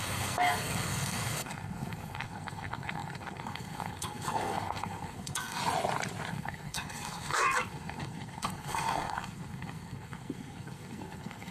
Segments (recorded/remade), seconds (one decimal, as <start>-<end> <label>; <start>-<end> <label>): 0.0-5.6 remade; 5.6-6.3 recorded; 6.3-11.5 remade